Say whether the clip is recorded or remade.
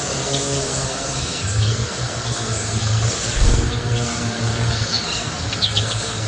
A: remade